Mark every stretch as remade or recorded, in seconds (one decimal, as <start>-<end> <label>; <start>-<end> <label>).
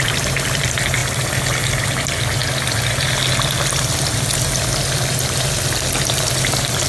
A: 0.0-1.0 remade; 1.0-1.8 recorded; 1.8-2.4 remade; 2.4-6.5 recorded; 6.5-6.9 remade